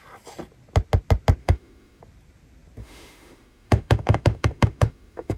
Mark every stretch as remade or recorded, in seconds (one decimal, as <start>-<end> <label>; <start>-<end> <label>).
0.0-1.4 recorded; 1.4-2.0 remade; 2.0-2.8 recorded; 2.8-5.4 remade